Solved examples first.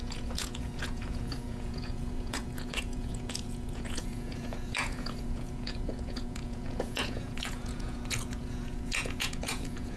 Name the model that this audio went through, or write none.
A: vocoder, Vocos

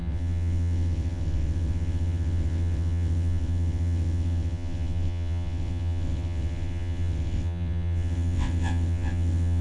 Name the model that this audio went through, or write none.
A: vocoder, WaveNeXt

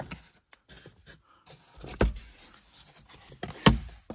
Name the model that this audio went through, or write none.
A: none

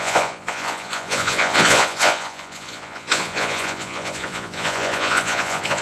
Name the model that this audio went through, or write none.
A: vocoder, Vocos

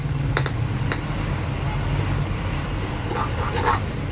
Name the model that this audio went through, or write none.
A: none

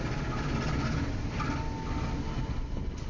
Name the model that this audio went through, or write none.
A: none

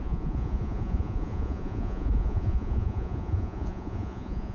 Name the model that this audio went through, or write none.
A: vocoder, Vocos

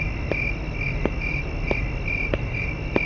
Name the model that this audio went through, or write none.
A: none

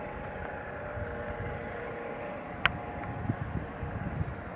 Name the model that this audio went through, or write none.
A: none